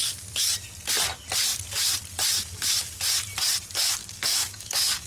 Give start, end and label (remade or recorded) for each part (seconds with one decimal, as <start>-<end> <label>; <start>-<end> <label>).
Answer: 0.0-4.0 recorded; 4.0-5.1 remade